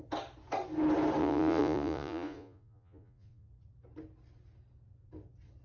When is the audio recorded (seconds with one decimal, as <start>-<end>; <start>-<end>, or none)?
0.0-1.2; 3.5-5.6